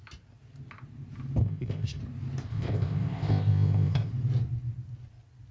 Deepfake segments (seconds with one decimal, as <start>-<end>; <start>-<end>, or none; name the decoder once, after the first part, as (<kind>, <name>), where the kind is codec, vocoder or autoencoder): 1.4-2.0 (codec, ZipCodec); 2.5-4.1